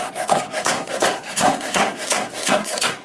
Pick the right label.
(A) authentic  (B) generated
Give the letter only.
B